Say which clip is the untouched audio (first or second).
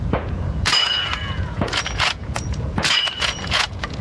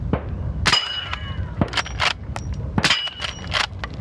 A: second